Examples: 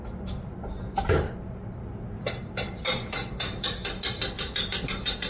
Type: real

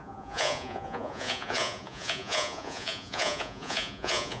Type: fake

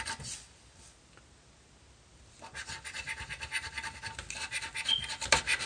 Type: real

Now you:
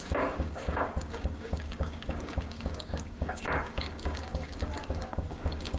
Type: fake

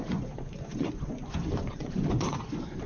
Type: fake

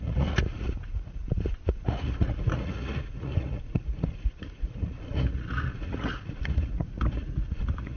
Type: fake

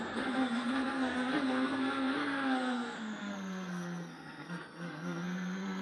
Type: fake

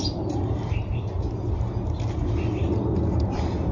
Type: real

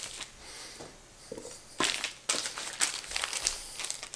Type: real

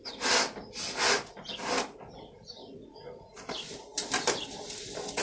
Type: real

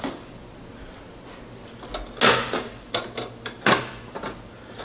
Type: real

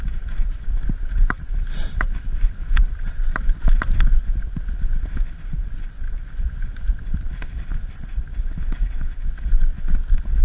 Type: fake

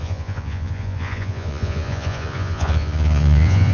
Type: fake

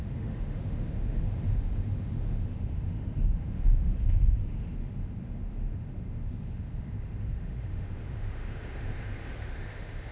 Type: fake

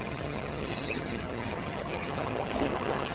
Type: fake